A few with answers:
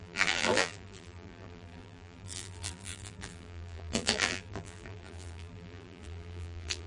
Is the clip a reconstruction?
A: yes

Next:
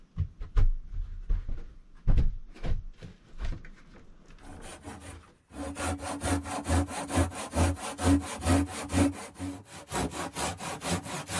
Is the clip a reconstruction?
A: no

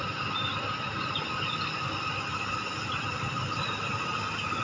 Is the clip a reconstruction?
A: no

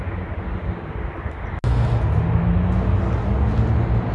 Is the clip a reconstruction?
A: no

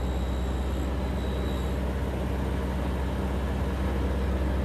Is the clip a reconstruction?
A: no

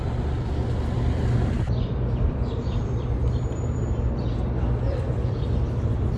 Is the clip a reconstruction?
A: yes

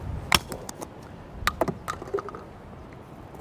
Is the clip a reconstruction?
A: no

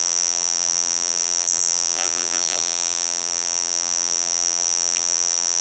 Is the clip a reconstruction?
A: yes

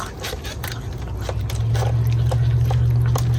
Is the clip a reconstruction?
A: no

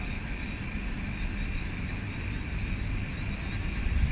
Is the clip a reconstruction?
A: no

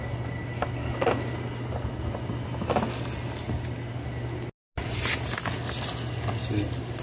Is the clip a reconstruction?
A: no